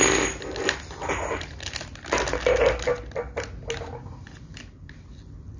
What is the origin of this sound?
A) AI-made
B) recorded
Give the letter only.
B